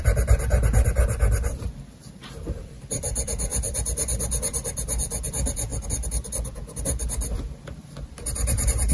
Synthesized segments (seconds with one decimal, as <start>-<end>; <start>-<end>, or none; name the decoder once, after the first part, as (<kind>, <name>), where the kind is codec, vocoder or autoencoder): none